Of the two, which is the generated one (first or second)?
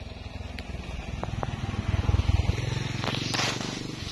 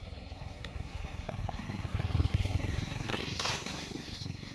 second